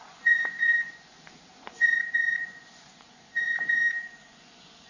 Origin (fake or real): fake